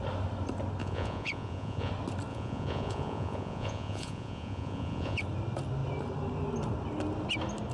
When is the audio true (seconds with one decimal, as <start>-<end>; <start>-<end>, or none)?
0.0-0.8; 1.9-2.3; 5.2-7.7